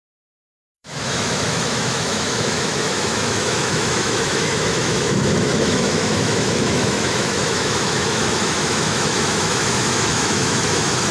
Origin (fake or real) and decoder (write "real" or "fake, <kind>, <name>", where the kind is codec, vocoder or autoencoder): fake, autoencoder, DAC-VAE